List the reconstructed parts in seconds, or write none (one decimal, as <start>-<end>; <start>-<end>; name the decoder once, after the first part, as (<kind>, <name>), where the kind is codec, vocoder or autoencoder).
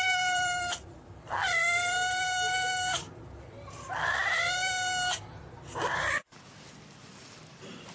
0.0-2.0 (vocoder, BigVGAN v2); 5.4-7.9